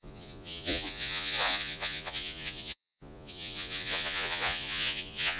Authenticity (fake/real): fake